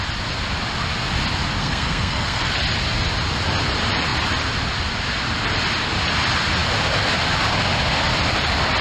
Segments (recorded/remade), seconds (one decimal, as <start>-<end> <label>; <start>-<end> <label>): 0.0-1.6 recorded; 1.6-2.5 remade; 2.5-8.8 recorded